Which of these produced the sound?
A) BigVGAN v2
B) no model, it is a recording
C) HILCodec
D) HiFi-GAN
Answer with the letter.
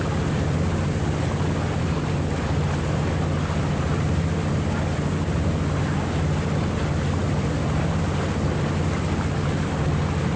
B